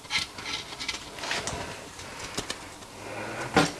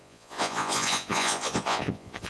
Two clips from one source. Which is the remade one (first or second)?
second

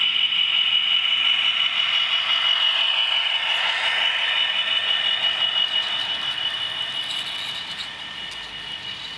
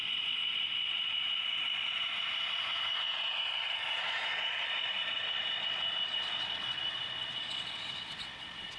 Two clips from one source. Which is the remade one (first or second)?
second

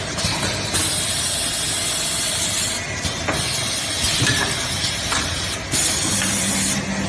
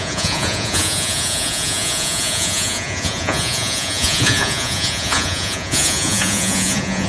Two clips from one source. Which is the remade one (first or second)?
second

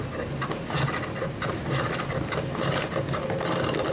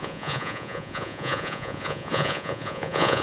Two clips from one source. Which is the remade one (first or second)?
second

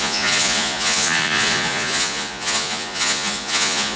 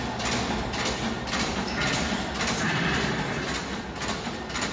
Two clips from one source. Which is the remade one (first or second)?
first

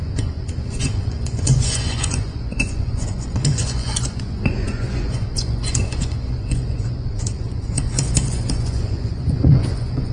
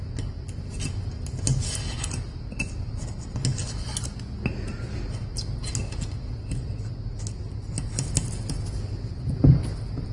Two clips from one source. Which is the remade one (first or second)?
first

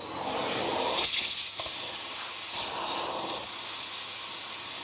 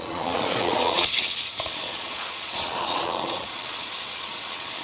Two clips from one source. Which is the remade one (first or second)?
second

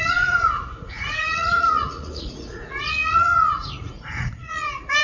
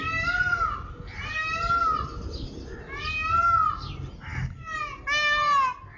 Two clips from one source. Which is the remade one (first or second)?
first